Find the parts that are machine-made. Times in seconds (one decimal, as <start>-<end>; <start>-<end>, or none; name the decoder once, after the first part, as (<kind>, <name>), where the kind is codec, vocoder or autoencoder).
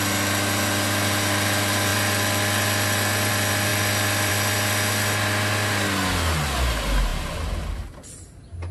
none